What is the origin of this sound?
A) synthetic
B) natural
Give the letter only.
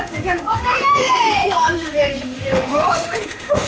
A